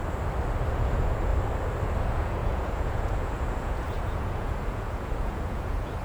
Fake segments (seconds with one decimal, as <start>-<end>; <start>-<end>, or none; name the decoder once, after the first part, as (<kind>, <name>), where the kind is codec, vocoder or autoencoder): 0.7-1.3 (vocoder, Vocos); 2.0-6.0